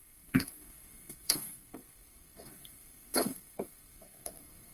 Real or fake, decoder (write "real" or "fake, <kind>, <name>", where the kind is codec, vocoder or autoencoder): fake, codec, SNAC